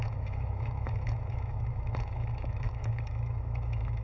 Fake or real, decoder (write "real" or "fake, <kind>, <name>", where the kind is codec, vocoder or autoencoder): fake, autoencoder, DAC-VAE